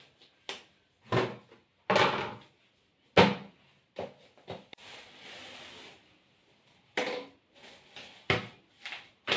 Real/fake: real